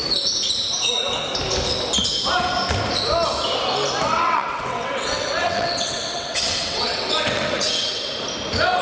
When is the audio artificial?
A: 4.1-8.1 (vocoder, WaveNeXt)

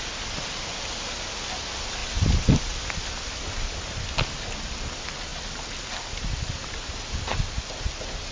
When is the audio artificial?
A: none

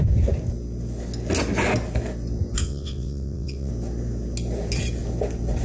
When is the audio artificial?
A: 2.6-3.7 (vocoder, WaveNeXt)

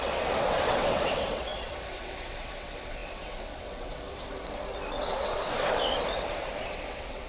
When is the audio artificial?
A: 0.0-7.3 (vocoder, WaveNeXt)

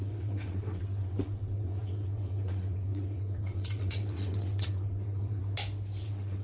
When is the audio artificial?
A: 0.0-5.4 (vocoder, WaveNeXt); 6.0-6.4

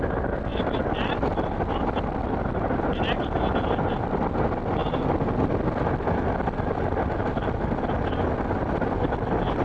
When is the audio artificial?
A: none

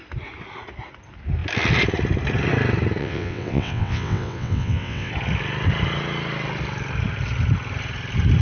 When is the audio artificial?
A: 3.0-5.1 (vocoder, WaveNeXt)

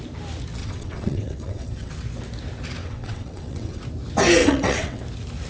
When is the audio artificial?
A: 0.6-1.9 (vocoder, WaveNeXt); 2.8-3.8; 4.4-5.0